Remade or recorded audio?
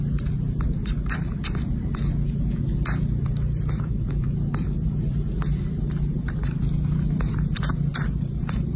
remade